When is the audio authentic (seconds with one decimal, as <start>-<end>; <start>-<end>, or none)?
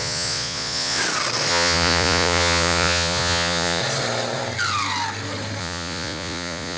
1.0-1.5; 3.8-5.6